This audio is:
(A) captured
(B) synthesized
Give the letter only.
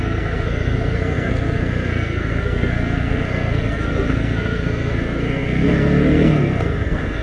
B